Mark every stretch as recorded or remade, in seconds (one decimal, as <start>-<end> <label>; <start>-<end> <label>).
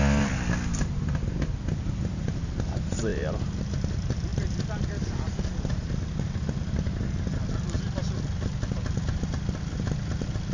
0.0-10.5 recorded